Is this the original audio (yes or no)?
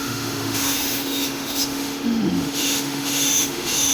no